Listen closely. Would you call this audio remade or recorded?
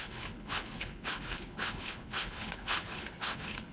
remade